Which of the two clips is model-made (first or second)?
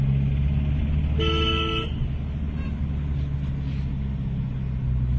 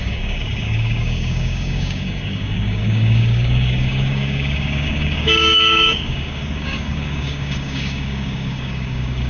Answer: second